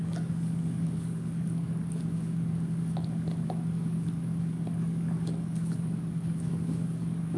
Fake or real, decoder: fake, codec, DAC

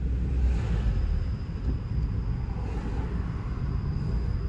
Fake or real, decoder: real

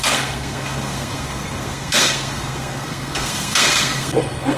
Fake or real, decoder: fake, codec, SNAC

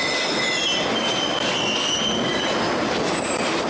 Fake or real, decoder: real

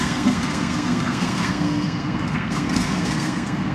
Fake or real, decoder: fake, codec, SNAC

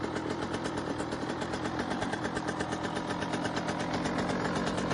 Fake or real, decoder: real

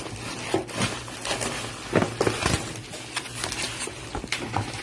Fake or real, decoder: real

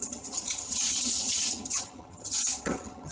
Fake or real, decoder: fake, vocoder, HiFi-GAN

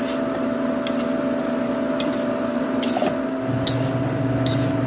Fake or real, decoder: real